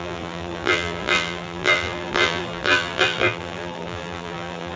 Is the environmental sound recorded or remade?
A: remade